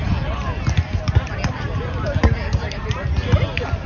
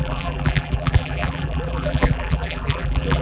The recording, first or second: first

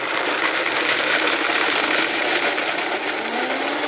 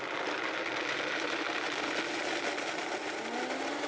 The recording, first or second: second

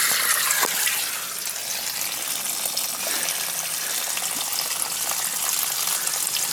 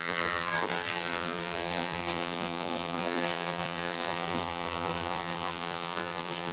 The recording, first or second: first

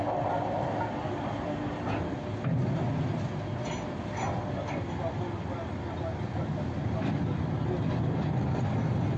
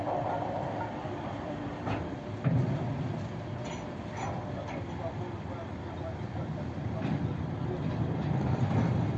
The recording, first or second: first